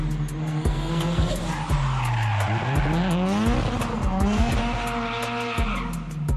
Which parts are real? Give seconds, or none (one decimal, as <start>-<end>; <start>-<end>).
0.0-0.4; 1.4-3.9; 4.5-6.4